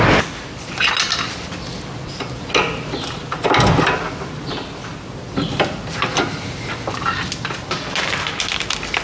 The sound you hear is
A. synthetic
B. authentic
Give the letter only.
B